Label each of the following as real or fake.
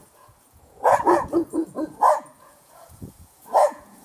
fake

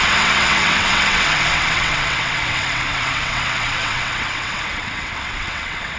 fake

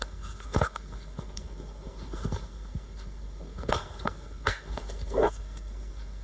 fake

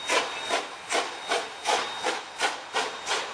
real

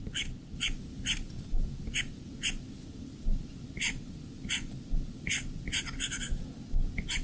real